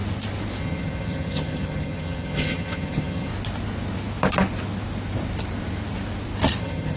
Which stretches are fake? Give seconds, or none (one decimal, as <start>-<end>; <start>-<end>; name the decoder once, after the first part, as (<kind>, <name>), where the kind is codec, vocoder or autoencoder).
0.6-3.3 (vocoder, HiFi-GAN); 6.6-7.0